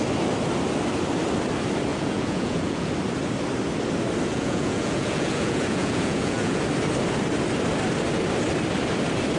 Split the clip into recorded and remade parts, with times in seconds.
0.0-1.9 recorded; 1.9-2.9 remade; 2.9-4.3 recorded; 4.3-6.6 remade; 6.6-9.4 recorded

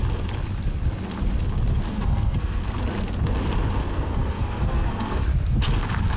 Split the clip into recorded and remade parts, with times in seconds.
0.0-1.9 recorded; 1.9-2.6 remade; 2.6-3.9 recorded; 3.9-5.2 remade; 5.2-6.2 recorded